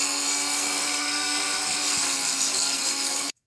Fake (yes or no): yes